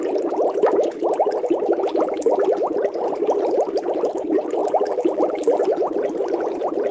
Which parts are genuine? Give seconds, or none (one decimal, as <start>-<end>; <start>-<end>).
0.0-1.9; 2.6-4.6; 5.6-6.9